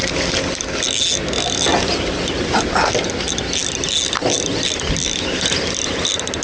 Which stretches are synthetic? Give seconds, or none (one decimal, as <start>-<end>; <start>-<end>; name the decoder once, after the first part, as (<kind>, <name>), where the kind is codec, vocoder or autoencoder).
none